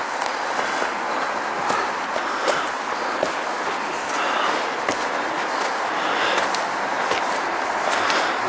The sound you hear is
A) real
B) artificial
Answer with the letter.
A